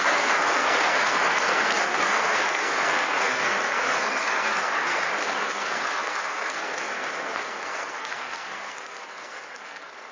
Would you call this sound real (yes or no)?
no